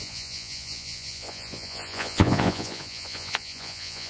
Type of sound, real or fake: fake